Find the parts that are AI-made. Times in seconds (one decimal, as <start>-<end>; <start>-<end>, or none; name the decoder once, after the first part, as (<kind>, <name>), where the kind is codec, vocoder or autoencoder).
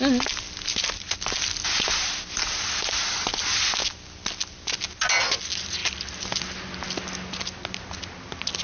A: none